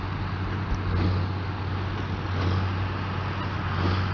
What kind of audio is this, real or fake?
real